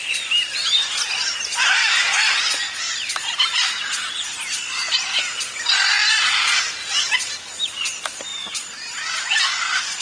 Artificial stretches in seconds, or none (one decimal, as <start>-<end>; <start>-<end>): none